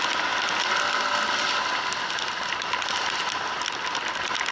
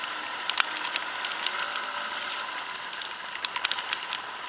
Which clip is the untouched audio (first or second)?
first